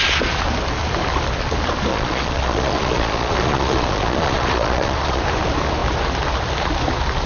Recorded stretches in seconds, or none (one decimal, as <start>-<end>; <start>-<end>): 0.0-1.9; 5.2-7.3